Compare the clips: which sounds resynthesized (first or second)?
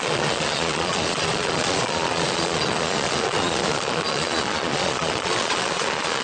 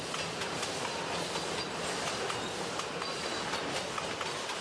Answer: first